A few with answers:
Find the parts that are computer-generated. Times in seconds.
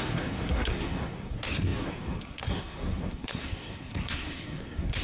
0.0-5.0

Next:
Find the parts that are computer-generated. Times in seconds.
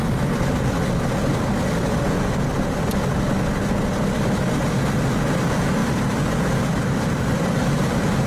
none